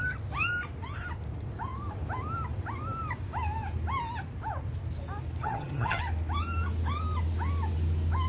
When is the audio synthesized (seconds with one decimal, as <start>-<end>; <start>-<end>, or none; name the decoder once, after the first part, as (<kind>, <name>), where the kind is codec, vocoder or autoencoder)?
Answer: 5.4-6.0 (vocoder, HiFi-GAN)